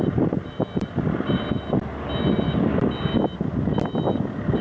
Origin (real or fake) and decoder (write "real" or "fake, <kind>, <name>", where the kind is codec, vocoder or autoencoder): real